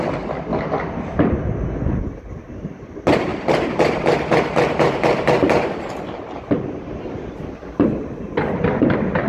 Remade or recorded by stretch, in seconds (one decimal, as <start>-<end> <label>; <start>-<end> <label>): 0.0-0.5 recorded; 0.5-1.2 remade; 1.2-3.3 recorded; 3.3-7.0 remade; 7.0-9.3 recorded

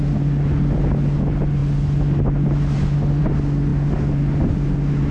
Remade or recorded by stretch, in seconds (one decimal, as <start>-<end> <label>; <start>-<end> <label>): 0.0-5.1 recorded

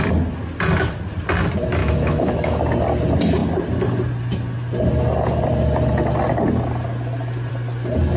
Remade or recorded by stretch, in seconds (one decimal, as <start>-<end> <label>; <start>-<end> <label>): 0.0-1.8 recorded; 1.8-2.6 remade; 2.6-8.2 recorded